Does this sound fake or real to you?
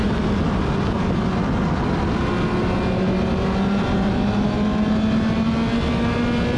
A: real